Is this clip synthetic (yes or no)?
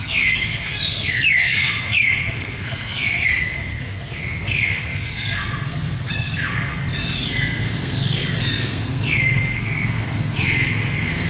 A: yes